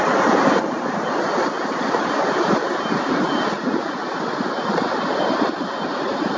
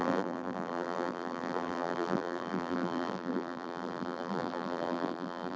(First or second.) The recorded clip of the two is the first